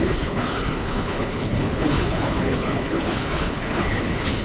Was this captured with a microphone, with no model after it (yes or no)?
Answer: no